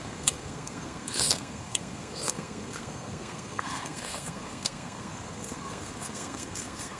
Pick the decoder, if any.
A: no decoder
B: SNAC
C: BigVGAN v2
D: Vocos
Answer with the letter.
B